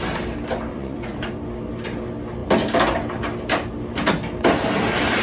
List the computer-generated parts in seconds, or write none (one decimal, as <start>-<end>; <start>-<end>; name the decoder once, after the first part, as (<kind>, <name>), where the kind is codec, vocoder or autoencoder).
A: 0.7-1.3 (vocoder, Vocos)

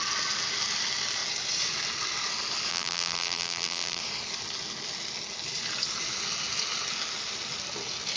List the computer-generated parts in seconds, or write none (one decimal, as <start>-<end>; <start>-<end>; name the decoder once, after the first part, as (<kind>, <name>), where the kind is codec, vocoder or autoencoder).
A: 2.7-4.0 (vocoder, BigVGAN v2)

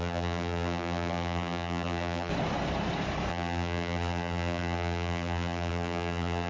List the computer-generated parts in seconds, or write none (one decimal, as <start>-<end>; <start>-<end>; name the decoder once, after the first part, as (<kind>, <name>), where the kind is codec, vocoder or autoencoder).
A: 0.0-2.3 (vocoder, BigVGAN v2); 3.3-6.5

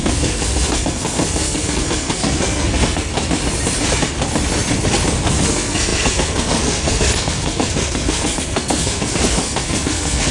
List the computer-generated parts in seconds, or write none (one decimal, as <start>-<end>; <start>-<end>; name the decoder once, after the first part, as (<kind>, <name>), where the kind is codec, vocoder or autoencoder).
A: 0.0-3.1 (codec, SNAC); 5.3-10.3

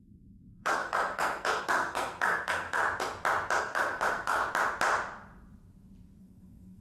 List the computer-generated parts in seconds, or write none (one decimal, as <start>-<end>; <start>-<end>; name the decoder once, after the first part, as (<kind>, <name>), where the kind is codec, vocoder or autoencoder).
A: 0.0-2.8 (codec, SNAC); 3.6-4.4; 6.2-6.8

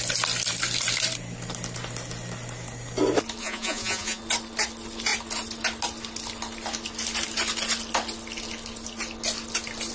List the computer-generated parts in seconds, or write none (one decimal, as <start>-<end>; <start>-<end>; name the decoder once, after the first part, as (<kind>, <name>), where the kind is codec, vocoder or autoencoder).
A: 3.4-4.2 (vocoder, Vocos)